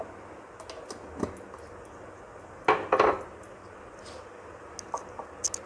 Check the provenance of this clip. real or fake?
real